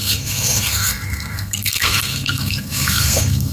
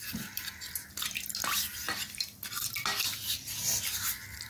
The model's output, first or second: first